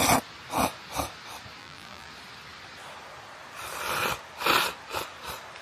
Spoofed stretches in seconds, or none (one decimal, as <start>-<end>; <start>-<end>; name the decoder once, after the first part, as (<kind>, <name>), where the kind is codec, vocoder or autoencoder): 1.6-2.1 (vocoder, BigVGAN v2)